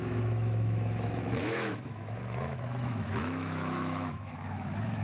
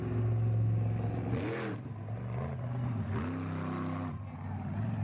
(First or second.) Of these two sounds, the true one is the second